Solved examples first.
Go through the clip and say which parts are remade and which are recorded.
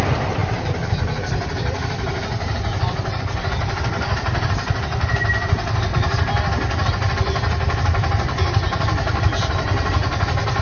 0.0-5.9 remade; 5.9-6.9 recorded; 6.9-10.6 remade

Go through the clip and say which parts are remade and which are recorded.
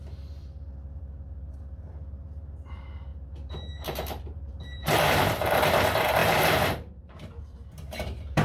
0.0-0.4 remade; 0.4-1.3 recorded; 1.3-8.4 remade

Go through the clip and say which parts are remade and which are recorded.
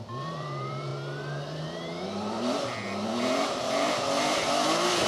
0.0-0.9 remade; 0.9-4.0 recorded; 4.0-5.1 remade